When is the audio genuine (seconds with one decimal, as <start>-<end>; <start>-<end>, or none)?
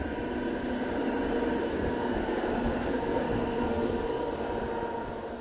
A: 0.0-1.7; 4.2-5.4